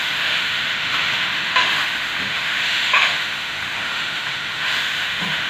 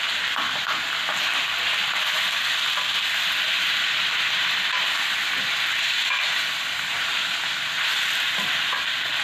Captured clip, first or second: second